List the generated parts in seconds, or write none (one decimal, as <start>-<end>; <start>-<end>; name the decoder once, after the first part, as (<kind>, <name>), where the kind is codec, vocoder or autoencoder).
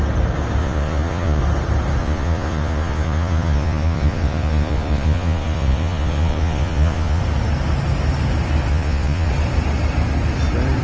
0.6-1.4 (vocoder, Vocos); 2.0-7.2; 8.7-9.3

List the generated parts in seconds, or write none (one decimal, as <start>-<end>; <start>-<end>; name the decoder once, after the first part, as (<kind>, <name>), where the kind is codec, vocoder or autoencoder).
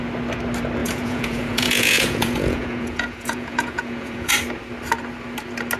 0.8-4.3 (vocoder, Vocos)